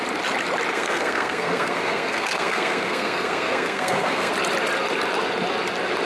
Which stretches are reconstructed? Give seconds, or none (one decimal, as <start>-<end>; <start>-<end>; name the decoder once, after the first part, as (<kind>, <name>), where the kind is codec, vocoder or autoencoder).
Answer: 0.7-4.3 (codec, SNAC)